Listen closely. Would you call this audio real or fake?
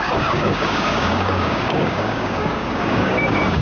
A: fake